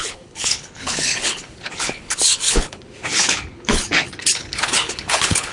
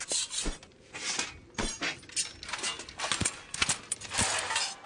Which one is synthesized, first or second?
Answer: first